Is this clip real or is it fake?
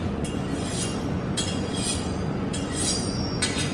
fake